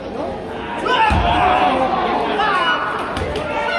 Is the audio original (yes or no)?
yes